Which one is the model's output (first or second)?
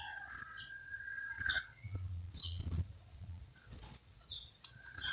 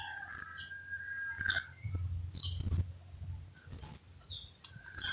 first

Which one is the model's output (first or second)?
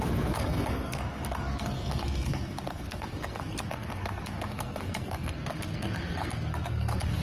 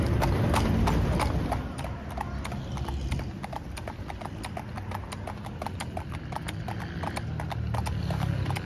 first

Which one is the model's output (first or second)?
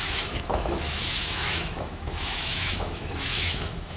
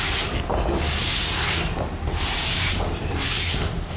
first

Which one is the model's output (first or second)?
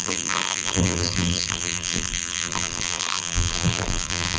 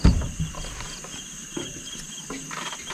first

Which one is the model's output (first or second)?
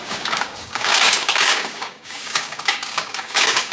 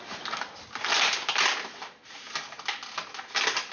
first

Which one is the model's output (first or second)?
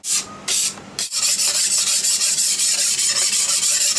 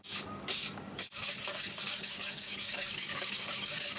second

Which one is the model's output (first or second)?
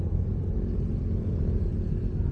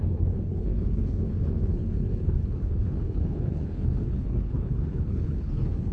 second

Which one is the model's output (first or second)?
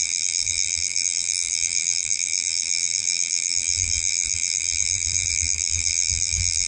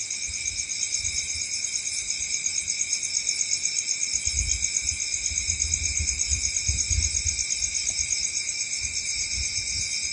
first